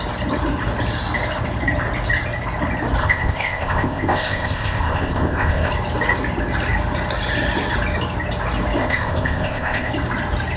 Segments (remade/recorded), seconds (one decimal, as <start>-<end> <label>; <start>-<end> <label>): 0.0-3.0 recorded; 3.0-5.7 remade; 5.7-8.8 recorded; 8.8-9.9 remade; 9.9-10.6 recorded